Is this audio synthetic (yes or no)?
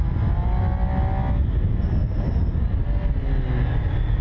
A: no